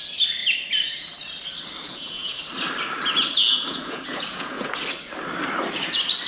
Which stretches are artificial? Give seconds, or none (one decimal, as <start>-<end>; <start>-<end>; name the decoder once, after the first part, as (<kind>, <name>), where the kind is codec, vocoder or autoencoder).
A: 1.8-2.4 (vocoder, Vocos); 3.4-4.8